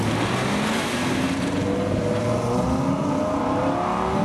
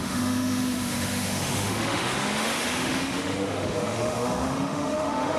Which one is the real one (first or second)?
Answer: first